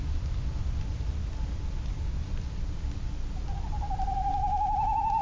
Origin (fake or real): real